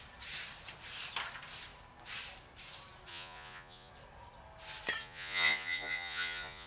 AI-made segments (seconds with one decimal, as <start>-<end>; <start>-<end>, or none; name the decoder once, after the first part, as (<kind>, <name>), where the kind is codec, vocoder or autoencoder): 3.1-3.9 (vocoder, Vocos); 5.0-6.7